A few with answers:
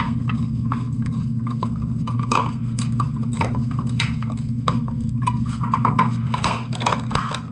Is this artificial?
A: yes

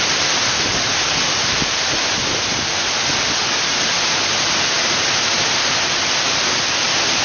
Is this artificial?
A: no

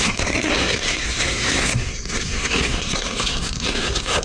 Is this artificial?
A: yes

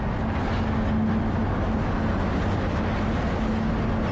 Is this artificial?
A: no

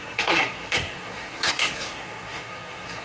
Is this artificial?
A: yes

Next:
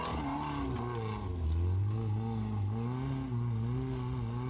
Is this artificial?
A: no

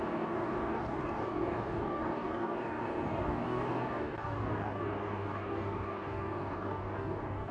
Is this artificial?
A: yes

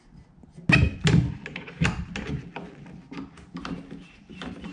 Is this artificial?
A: no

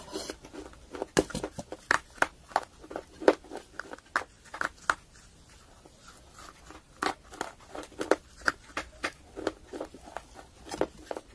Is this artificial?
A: no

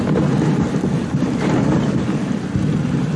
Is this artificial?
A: no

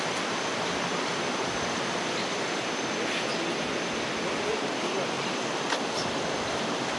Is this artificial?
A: no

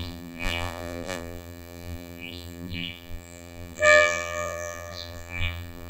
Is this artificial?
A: yes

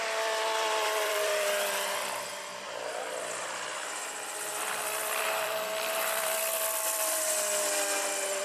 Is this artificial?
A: yes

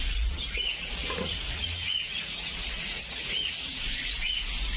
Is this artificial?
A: yes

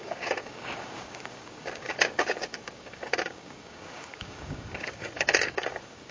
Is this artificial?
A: yes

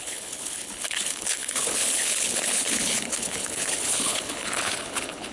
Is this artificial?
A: yes